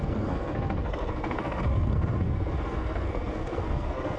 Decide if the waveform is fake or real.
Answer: fake